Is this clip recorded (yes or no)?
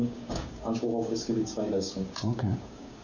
no